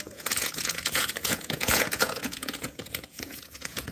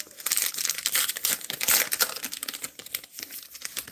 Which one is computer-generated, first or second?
first